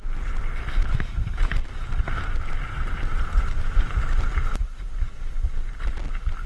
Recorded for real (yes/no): yes